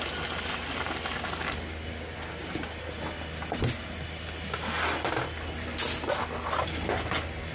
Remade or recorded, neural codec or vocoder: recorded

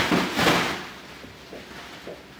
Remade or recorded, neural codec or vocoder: recorded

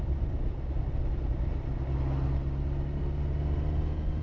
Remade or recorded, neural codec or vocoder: recorded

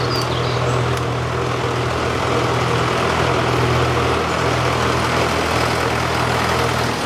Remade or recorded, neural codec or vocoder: recorded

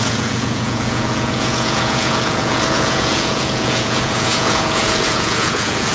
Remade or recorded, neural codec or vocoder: remade, vocoder, Vocos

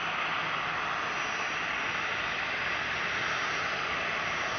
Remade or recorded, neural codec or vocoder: recorded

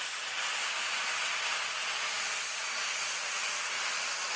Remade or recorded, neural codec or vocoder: recorded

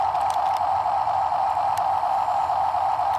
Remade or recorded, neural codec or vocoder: recorded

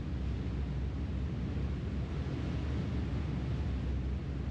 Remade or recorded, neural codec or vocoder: recorded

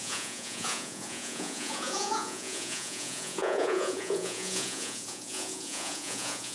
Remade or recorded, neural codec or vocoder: remade, vocoder, Vocos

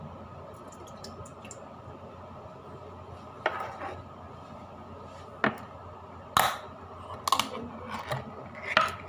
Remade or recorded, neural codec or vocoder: recorded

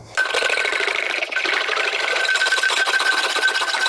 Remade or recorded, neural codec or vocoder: recorded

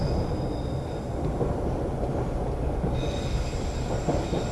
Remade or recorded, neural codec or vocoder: recorded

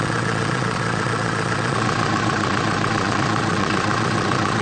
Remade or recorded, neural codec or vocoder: remade, vocoder, Vocos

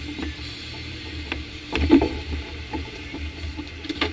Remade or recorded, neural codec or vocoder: remade, vocoder, BigVGAN v2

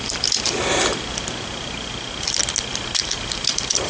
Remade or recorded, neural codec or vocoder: recorded